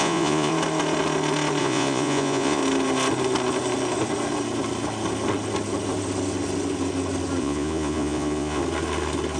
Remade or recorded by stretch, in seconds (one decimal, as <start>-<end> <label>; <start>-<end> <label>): 0.0-0.5 remade; 0.5-1.6 recorded; 1.6-2.6 remade; 2.6-7.4 recorded; 7.4-8.6 remade; 8.6-9.4 recorded